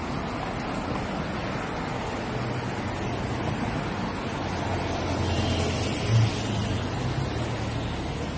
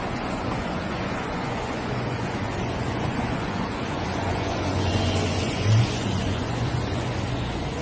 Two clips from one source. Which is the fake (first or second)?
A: second